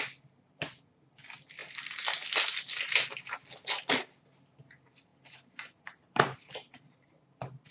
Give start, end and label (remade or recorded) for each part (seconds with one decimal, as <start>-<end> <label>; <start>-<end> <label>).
0.0-7.7 recorded